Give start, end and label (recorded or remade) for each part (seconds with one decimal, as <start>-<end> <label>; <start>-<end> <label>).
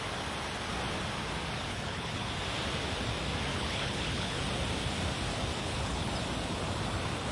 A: 0.0-1.7 recorded; 1.7-2.3 remade; 2.3-3.5 recorded; 3.5-4.4 remade; 4.4-5.6 recorded; 5.6-6.1 remade; 6.1-7.3 recorded